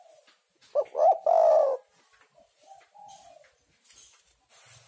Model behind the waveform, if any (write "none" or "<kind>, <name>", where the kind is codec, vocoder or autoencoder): none